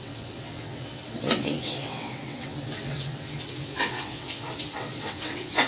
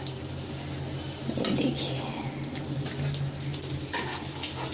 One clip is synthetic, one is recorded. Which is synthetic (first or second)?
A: first